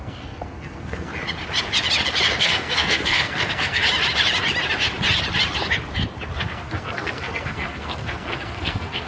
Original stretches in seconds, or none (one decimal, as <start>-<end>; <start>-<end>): 1.1-2.4; 3.8-6.4

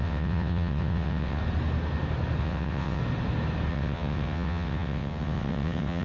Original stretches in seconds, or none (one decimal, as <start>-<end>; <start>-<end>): 1.4-2.4; 3.0-3.7

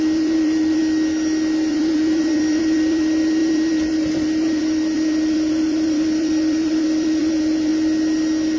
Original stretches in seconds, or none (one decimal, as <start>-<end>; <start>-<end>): 0.8-1.7; 7.7-8.6

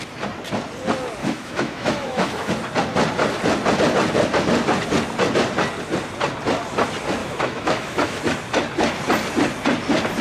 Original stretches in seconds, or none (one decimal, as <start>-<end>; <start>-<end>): 0.0-1.2; 2.5-7.2; 8.2-10.2

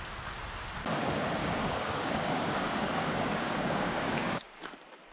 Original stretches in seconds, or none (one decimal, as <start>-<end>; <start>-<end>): 0.0-1.4; 4.5-5.1